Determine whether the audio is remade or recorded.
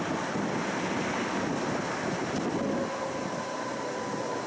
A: recorded